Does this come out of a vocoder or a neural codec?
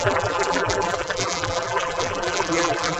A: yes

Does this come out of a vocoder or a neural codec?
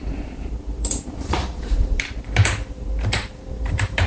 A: yes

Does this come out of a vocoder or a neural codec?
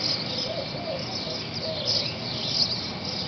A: no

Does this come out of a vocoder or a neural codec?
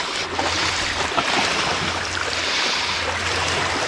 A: yes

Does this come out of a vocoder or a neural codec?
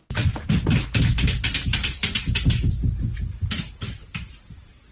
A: no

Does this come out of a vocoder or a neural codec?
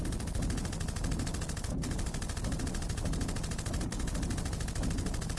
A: no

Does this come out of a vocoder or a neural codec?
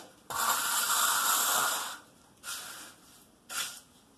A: no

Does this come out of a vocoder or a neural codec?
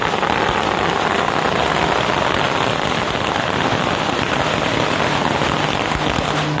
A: no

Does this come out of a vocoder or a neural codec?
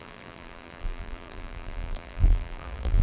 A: yes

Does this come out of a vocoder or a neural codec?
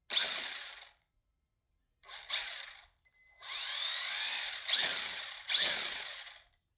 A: no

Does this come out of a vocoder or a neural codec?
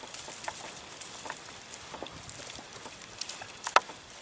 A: no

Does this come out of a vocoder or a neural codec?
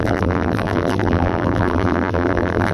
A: yes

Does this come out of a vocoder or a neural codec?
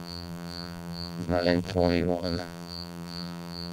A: yes